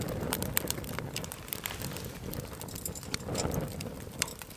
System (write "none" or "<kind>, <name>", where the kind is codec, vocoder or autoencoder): vocoder, BigVGAN v2